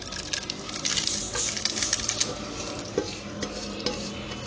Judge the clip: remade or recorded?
recorded